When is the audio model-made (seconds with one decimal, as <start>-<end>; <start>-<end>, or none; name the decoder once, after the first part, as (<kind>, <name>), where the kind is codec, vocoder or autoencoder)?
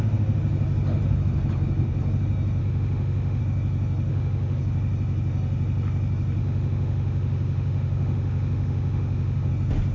2.6-3.4 (autoencoder, DAC-VAE); 4.1-4.6; 6.4-9.5